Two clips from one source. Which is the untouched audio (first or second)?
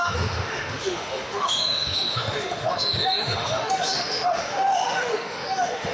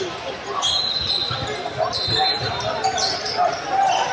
second